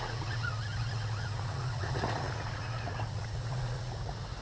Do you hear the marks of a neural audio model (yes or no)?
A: yes